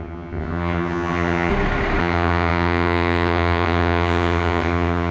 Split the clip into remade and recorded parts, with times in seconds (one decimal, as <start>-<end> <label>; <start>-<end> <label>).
0.0-1.5 remade; 1.5-2.0 recorded; 2.0-5.1 remade